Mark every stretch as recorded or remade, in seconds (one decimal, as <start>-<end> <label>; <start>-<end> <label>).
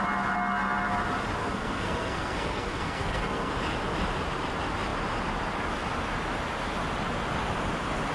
0.0-1.4 recorded; 1.4-3.5 remade; 3.5-8.1 recorded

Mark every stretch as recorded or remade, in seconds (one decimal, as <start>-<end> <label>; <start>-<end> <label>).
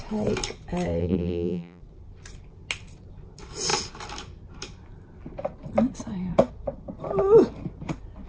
0.0-1.0 recorded; 1.0-1.8 remade; 1.8-8.3 recorded